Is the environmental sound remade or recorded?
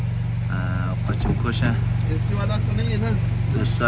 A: recorded